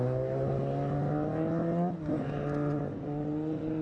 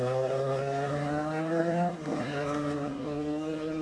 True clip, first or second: first